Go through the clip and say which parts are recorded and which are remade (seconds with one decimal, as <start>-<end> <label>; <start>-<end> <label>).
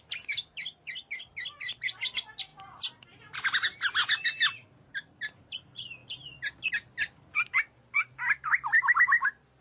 0.0-9.6 recorded